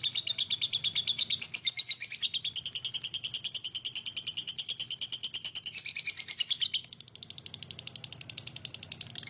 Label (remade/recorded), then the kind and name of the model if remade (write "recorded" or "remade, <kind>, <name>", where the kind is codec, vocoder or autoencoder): recorded